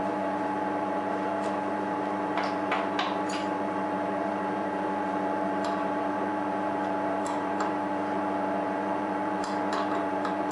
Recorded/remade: remade